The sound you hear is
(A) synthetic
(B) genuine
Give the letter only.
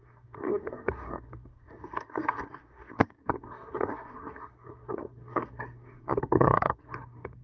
A